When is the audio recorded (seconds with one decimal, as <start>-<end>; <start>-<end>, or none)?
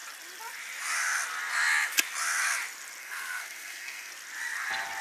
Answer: 0.0-3.0; 4.1-5.0